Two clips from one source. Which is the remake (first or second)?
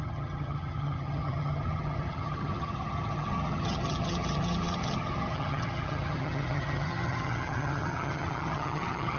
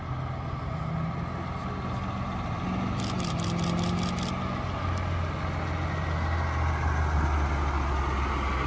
first